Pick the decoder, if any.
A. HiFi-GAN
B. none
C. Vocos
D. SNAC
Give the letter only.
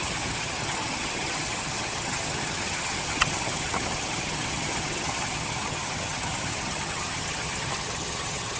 A